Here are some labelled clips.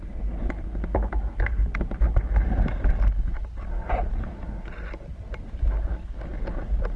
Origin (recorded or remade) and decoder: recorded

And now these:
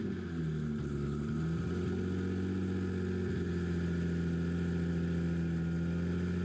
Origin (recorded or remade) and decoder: recorded